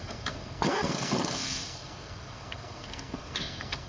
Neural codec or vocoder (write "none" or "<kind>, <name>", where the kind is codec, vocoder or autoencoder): codec, SNAC